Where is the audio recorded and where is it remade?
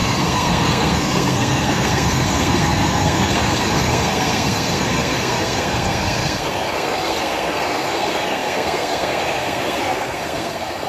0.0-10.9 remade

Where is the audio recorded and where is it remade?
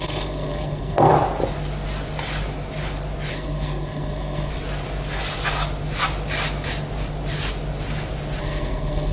0.0-1.1 remade; 1.1-3.3 recorded; 3.3-4.5 remade; 4.5-8.4 recorded; 8.4-9.1 remade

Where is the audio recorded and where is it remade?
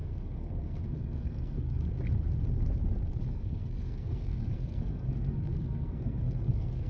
0.0-1.9 remade; 1.9-3.3 recorded; 3.3-6.9 remade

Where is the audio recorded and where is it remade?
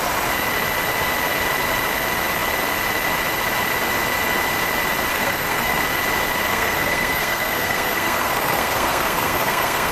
0.0-5.1 recorded; 5.1-5.8 remade; 5.8-6.5 recorded; 6.5-9.9 remade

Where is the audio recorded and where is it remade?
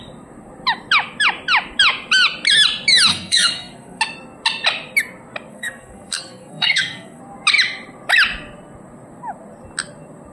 0.0-3.1 recorded; 3.1-4.0 remade; 4.0-5.5 recorded; 5.5-7.2 remade; 7.2-10.3 recorded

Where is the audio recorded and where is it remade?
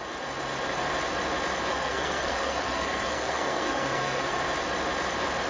0.0-1.7 recorded; 1.7-4.4 remade; 4.4-5.5 recorded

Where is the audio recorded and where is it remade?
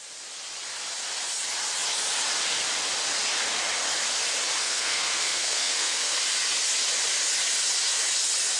0.0-4.6 recorded; 4.6-6.2 remade; 6.2-8.6 recorded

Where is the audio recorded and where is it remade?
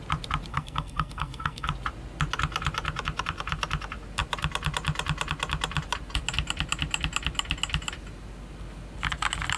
0.0-0.5 recorded; 0.5-1.7 remade; 1.7-9.6 recorded